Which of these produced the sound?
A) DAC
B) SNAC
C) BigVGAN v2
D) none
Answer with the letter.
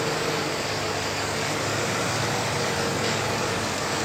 A